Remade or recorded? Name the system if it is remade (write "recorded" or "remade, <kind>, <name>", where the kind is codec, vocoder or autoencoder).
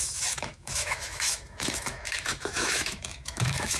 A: remade, autoencoder, DAC-VAE